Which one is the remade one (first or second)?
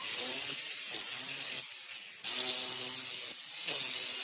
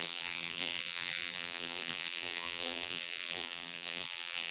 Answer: second